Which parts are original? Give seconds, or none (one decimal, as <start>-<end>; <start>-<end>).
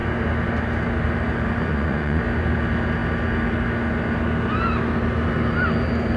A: 0.0-1.7; 2.2-6.2